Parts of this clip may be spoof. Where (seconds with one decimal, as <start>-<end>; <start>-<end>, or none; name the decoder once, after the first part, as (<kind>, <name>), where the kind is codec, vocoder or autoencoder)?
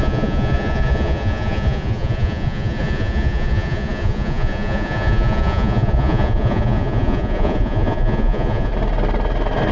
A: 0.0-8.7 (vocoder, Vocos)